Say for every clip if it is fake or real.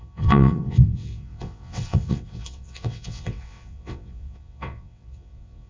fake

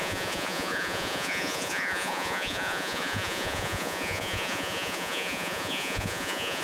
fake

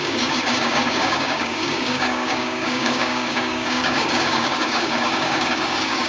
fake